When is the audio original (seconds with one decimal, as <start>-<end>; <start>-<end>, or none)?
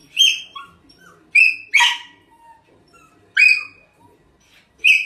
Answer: 0.0-5.1